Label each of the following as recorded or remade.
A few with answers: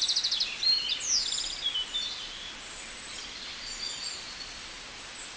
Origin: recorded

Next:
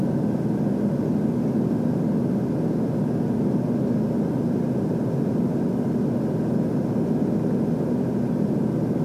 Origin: recorded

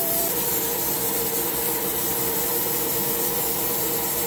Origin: remade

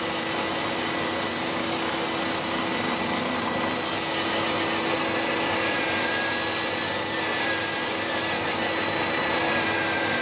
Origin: recorded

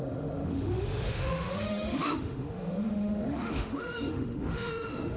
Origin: remade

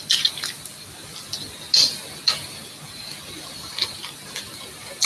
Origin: recorded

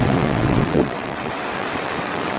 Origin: remade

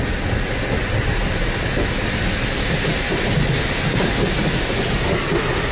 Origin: recorded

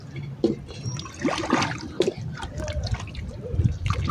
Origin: remade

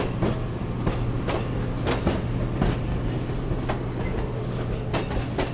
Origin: recorded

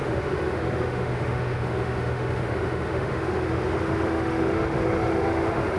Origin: remade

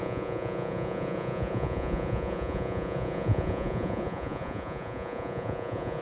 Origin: remade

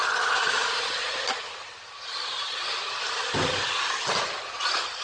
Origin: recorded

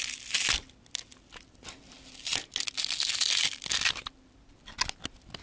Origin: recorded